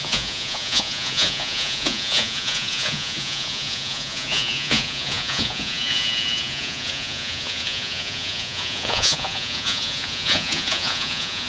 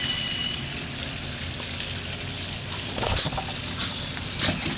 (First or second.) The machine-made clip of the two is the first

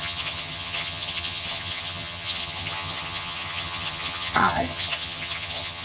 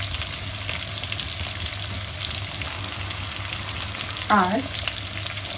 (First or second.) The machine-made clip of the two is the first